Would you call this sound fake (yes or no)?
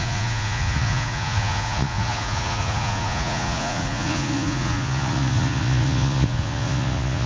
yes